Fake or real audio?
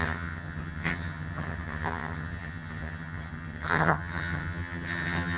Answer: fake